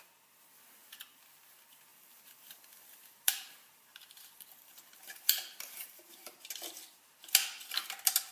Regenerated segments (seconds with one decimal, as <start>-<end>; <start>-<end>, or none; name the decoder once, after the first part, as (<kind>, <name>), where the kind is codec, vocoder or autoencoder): 1.9-6.4 (vocoder, BigVGAN v2)